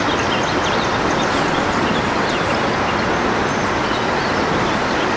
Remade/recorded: recorded